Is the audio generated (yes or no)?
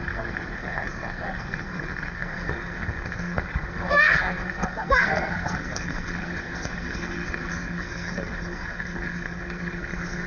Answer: yes